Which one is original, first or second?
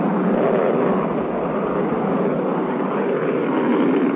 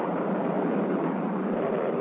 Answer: first